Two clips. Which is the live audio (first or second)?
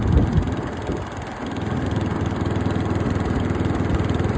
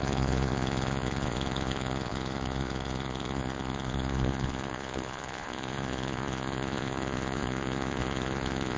first